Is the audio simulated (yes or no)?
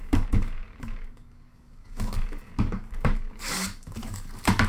yes